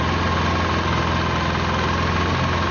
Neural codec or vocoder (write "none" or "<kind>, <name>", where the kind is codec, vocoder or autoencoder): none